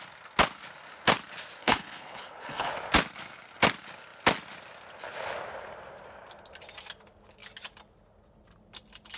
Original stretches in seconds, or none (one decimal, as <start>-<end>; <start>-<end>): 0.0-1.6; 2.7-9.2